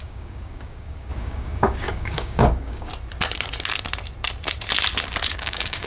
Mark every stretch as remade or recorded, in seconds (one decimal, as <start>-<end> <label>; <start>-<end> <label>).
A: 0.0-2.9 remade; 2.9-5.3 recorded; 5.3-5.9 remade